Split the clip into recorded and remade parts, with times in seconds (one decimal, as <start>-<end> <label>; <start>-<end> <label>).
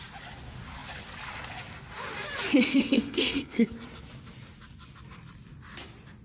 0.0-2.7 recorded; 2.7-3.7 remade; 3.7-6.2 recorded